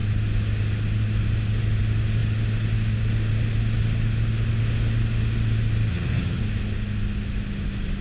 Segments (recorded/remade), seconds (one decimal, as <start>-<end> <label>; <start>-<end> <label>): 0.0-5.9 recorded; 5.9-6.4 remade; 6.4-8.0 recorded